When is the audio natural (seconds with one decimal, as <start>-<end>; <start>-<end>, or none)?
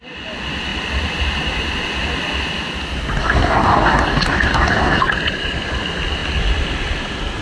0.0-3.2; 5.0-7.4